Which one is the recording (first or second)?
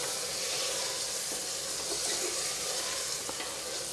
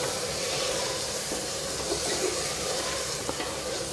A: first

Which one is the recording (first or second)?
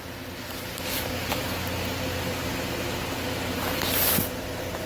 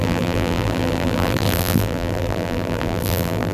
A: first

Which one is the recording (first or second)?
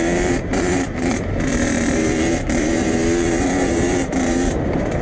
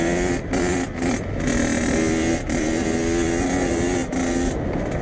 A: second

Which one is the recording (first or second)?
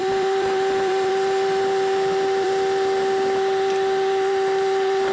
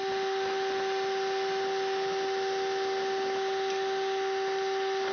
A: second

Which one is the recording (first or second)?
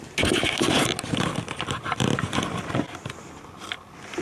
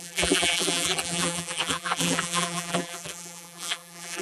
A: first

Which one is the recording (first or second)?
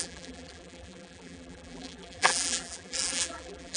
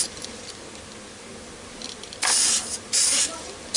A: second